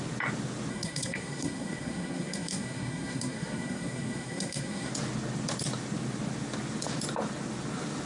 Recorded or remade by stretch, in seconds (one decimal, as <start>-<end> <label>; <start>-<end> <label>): 0.0-0.7 recorded; 0.7-4.9 remade; 4.9-8.1 recorded